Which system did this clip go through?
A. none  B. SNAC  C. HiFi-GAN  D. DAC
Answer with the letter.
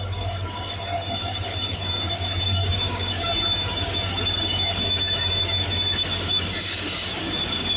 D